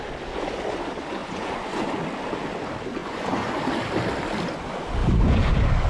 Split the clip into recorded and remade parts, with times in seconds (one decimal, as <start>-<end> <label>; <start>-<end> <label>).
0.0-1.2 recorded; 1.2-1.9 remade; 1.9-3.0 recorded; 3.0-3.6 remade; 3.6-5.0 recorded; 5.0-5.5 remade; 5.5-5.9 recorded